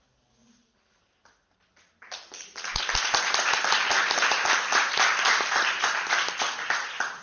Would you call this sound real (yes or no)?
yes